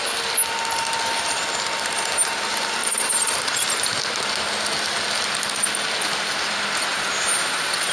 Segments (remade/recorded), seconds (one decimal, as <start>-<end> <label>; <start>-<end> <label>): 0.0-2.8 recorded; 2.8-4.0 remade; 4.0-6.9 recorded; 6.9-7.9 remade